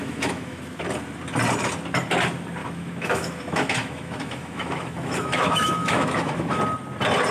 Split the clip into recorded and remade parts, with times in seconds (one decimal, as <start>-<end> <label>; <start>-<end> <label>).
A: 0.0-0.8 remade; 0.8-2.6 recorded; 2.6-6.6 remade; 6.6-7.3 recorded